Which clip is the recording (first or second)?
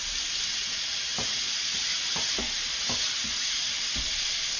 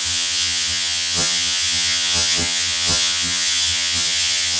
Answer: first